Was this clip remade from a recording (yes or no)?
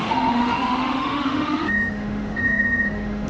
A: yes